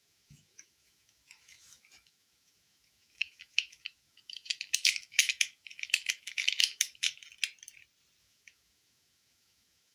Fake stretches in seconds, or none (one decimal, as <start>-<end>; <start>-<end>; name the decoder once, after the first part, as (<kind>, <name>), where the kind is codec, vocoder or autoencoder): 0.0-7.2 (autoencoder, DAC-VAE); 8.2-9.9